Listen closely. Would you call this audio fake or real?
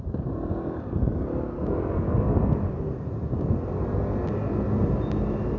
real